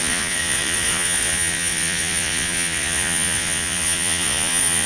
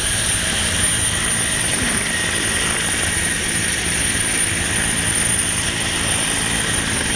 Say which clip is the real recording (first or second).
second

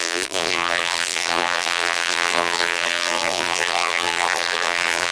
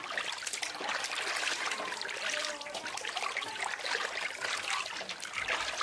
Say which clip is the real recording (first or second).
second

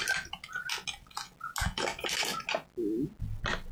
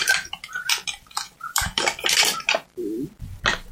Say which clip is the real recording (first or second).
first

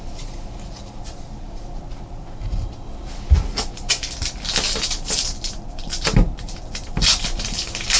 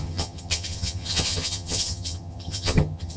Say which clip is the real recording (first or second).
first